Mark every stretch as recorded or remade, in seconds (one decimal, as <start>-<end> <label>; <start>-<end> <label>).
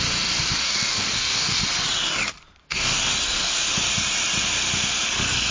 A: 0.0-0.6 recorded; 0.6-1.6 remade; 1.6-2.6 recorded; 2.6-3.1 remade; 3.1-5.5 recorded